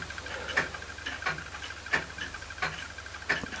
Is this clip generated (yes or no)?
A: no